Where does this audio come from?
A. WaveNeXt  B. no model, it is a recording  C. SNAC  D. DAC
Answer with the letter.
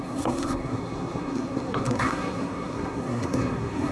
C